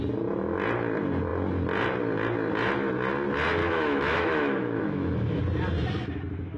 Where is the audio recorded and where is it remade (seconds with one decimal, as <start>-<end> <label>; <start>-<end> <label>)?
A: 0.0-3.6 recorded; 3.6-5.4 remade; 5.4-6.6 recorded